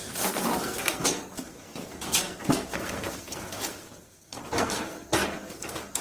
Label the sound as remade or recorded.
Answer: remade